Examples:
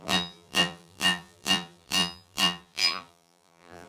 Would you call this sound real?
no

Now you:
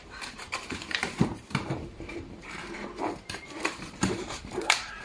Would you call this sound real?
no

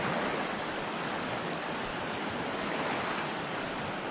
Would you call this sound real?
no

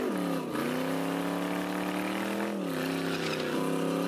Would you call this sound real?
yes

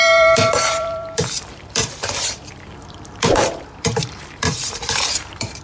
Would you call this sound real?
no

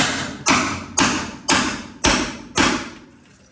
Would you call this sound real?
yes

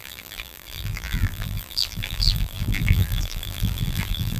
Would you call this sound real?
no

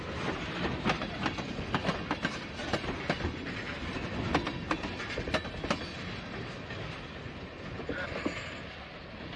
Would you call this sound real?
yes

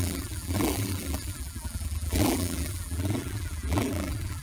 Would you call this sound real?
no